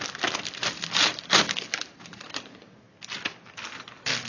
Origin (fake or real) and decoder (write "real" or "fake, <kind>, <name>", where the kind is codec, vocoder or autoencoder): real